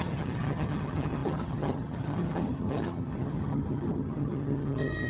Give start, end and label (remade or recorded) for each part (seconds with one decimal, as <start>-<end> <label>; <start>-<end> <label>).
0.0-5.1 remade